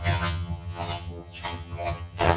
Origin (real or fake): fake